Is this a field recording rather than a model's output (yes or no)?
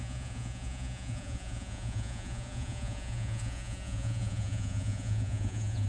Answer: no